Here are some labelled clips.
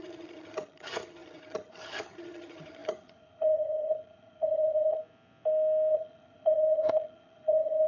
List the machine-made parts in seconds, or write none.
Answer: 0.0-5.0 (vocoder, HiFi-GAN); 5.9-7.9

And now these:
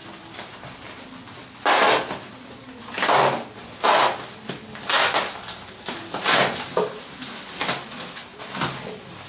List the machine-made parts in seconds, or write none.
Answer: none

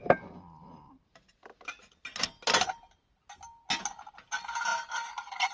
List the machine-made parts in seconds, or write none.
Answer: none

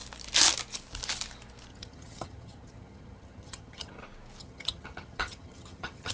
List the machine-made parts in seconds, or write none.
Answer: 1.7-4.0 (vocoder, HiFi-GAN); 4.4-6.1

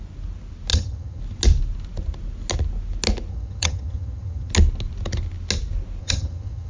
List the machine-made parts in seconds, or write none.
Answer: 0.7-1.2 (vocoder, HiFi-GAN); 3.3-4.5; 6.0-6.7

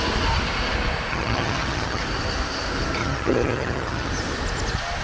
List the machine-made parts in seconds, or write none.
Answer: 1.1-2.0 (vocoder, HiFi-GAN); 3.0-4.1